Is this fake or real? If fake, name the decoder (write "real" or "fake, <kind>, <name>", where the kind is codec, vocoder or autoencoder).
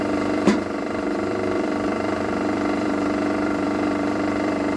fake, vocoder, BigVGAN v2